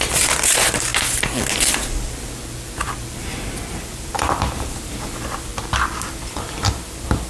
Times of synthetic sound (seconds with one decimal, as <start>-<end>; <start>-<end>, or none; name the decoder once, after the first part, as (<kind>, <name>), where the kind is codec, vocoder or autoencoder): 0.0-0.9 (vocoder, BigVGAN v2); 3.1-5.5; 6.1-7.3